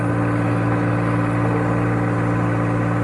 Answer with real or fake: real